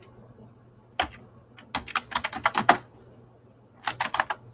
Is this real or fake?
real